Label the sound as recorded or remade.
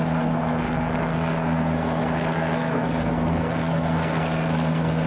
remade